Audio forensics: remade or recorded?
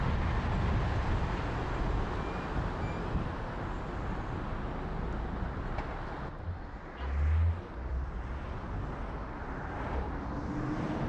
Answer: recorded